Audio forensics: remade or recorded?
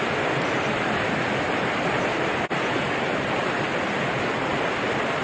recorded